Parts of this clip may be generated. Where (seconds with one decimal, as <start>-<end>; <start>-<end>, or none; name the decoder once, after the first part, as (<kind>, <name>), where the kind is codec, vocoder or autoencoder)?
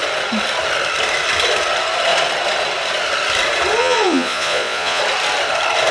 3.8-5.0 (vocoder, Vocos)